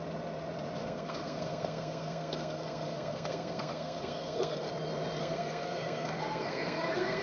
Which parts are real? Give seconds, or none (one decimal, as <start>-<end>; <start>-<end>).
0.0-0.8; 4.7-5.2

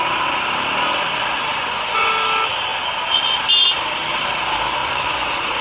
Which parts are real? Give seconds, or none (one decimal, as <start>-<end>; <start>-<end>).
0.0-1.5; 2.1-4.8

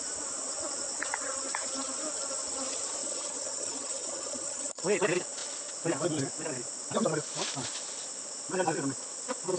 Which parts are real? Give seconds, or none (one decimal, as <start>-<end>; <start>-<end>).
0.0-3.0; 5.0-9.6

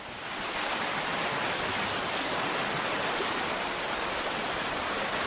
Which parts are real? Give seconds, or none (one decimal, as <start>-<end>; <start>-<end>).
0.0-5.3

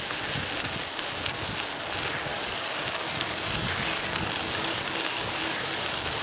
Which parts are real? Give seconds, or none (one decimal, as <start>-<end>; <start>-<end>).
0.0-2.3

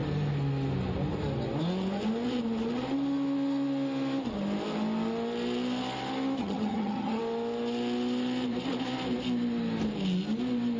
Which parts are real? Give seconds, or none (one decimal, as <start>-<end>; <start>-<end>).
0.0-6.4; 7.2-10.8

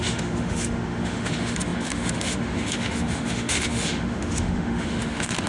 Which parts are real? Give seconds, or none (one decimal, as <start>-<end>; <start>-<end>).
none